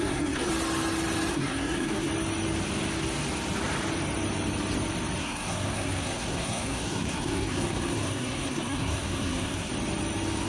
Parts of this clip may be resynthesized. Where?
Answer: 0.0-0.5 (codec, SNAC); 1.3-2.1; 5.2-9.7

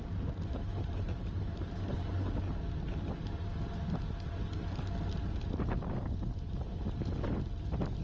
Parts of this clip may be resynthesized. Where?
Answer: 0.7-2.0 (vocoder, BigVGAN v2)

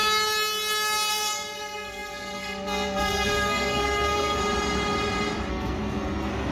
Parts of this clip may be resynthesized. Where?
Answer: 1.1-4.4 (codec, SNAC); 5.5-6.5

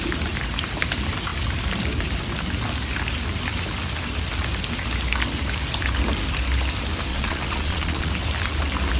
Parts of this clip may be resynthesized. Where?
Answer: 7.1-8.1 (vocoder, Vocos)

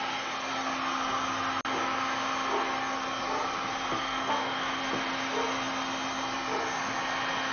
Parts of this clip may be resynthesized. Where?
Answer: 3.9-4.8 (codec, SNAC)

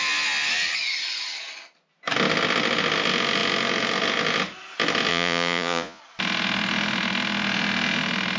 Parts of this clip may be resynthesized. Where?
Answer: 5.1-6.0 (vocoder, Vocos)

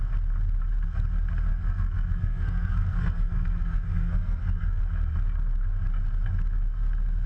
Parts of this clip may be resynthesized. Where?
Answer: 1.5-4.8 (codec, SNAC)